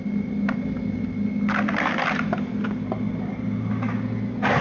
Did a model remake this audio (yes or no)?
yes